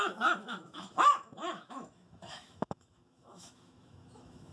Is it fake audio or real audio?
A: fake